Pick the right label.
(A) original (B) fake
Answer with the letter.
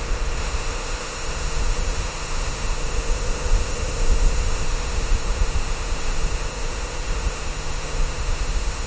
B